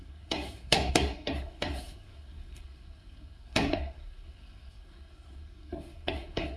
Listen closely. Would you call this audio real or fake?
fake